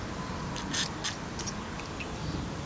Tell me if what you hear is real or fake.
real